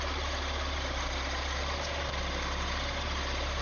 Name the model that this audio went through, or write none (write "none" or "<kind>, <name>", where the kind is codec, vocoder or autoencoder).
none